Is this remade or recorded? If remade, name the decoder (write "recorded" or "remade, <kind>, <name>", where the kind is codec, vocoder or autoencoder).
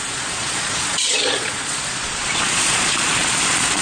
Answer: remade, vocoder, Vocos